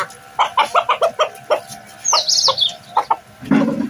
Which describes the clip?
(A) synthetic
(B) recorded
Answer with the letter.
B